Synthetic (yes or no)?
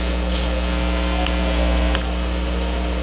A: no